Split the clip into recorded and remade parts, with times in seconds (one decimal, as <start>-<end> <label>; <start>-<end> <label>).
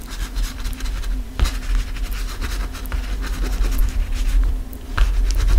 0.0-3.8 recorded; 3.8-4.7 remade; 4.7-5.6 recorded